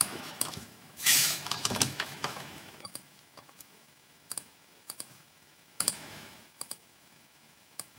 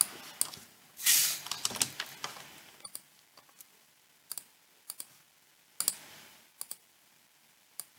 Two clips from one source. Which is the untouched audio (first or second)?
second